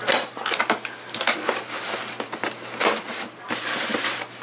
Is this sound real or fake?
real